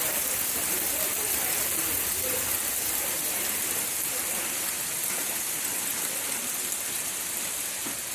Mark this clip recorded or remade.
recorded